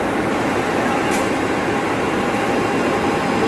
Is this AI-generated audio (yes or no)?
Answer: no